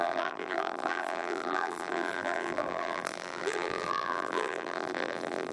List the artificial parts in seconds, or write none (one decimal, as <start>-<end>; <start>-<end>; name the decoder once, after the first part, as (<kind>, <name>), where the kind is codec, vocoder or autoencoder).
0.0-5.5 (vocoder, BigVGAN v2)

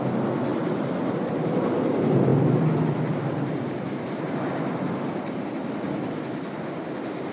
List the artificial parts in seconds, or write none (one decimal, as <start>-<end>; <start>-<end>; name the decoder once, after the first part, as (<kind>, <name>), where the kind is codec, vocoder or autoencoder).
0.5-1.5 (vocoder, BigVGAN v2)

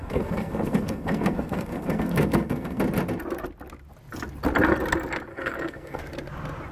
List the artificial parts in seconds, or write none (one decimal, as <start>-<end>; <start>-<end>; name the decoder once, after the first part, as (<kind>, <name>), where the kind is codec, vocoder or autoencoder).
0.0-2.8 (codec, SNAC); 5.3-6.0